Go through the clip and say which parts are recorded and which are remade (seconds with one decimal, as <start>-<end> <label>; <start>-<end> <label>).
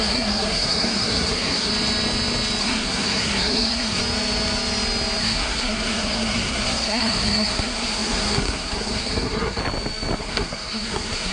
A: 0.0-1.7 remade; 1.7-2.6 recorded; 2.6-4.0 remade; 4.0-5.2 recorded; 5.2-9.6 remade; 9.6-10.2 recorded; 10.2-11.3 remade